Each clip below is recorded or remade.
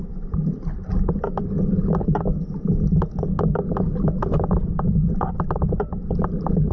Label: recorded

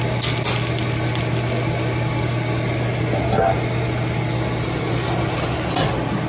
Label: recorded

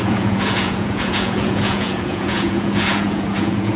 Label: remade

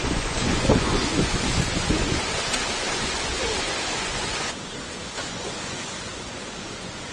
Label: remade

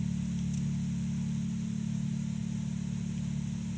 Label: recorded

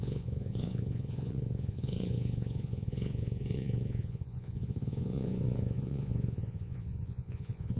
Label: remade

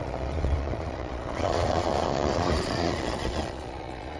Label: remade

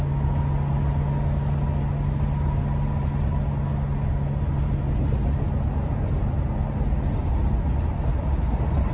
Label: recorded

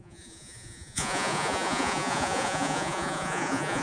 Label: remade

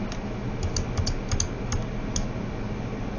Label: recorded